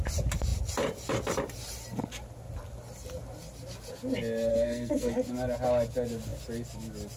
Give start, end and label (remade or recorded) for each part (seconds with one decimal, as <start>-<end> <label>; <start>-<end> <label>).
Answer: 0.0-4.5 recorded; 4.5-5.1 remade; 5.1-7.2 recorded